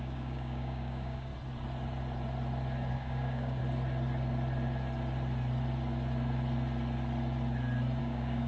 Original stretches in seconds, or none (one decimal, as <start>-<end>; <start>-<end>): 1.3-2.9; 3.6-8.0